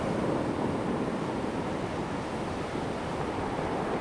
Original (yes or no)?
yes